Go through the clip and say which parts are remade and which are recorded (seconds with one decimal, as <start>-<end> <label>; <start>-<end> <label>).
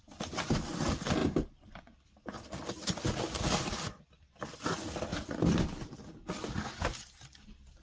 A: 0.0-7.8 recorded